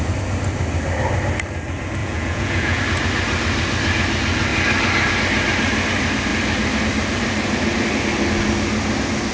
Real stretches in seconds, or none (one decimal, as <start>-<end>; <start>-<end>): 0.0-2.0; 2.8-9.3